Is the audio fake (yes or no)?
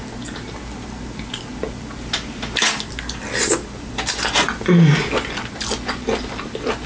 no